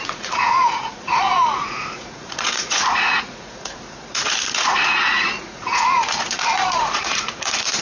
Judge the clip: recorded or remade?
remade